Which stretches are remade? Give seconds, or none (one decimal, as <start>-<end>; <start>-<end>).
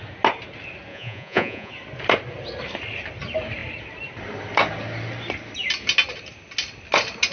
0.9-1.7